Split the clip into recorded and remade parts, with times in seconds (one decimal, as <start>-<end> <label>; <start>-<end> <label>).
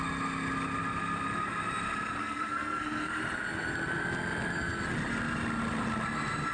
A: 0.0-2.2 recorded; 2.2-3.2 remade; 3.2-6.5 recorded